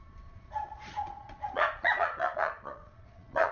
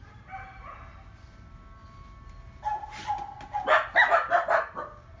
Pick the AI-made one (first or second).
first